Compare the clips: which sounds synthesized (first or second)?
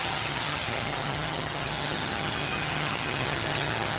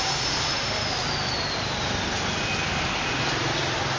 first